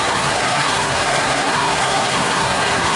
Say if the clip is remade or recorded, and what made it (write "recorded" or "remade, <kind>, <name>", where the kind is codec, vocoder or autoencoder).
remade, codec, SNAC